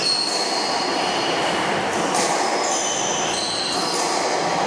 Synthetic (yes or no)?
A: no